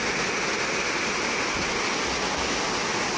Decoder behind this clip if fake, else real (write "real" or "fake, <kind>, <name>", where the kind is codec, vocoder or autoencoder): real